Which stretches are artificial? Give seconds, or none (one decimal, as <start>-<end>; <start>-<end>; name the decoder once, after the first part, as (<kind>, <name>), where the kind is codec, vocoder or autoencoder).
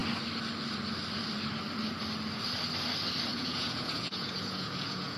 3.3-5.2 (vocoder, Vocos)